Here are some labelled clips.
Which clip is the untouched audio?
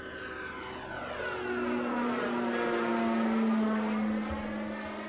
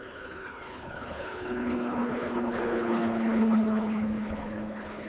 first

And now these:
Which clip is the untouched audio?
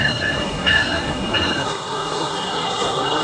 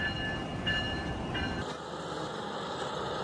second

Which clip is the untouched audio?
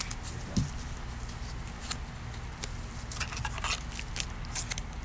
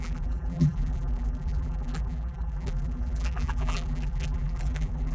first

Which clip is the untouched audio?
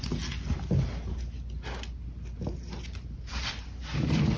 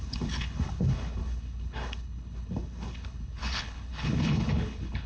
first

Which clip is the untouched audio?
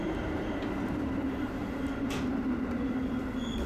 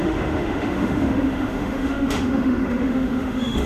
first